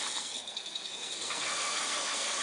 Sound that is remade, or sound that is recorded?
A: remade